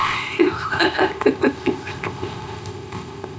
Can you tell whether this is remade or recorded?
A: remade